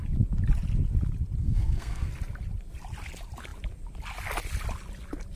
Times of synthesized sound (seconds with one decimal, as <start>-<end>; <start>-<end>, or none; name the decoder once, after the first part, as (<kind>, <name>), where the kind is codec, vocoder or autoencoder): 1.4-2.1 (codec, SNAC)